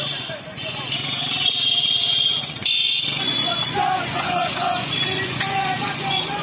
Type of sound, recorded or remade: remade